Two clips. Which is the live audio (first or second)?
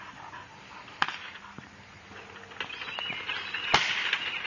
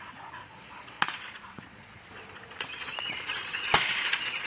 first